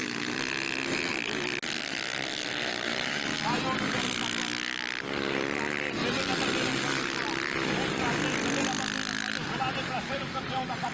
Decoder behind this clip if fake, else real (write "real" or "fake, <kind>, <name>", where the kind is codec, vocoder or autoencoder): real